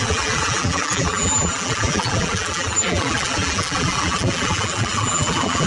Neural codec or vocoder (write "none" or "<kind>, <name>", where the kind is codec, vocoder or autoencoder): vocoder, BigVGAN v2